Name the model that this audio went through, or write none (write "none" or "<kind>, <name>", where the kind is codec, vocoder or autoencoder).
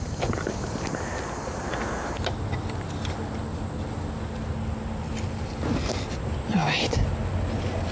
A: none